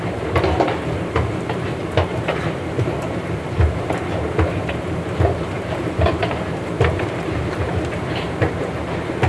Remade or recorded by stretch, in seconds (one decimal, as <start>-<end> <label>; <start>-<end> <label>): 0.0-9.3 remade